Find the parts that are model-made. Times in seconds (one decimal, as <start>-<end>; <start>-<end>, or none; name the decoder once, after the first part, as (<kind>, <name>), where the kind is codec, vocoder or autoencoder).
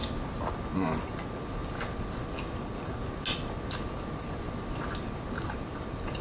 none